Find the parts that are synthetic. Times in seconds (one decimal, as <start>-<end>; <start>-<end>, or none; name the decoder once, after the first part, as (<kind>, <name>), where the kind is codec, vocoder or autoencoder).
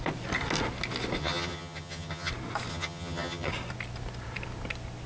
1.2-2.3 (vocoder, HiFi-GAN); 2.7-3.5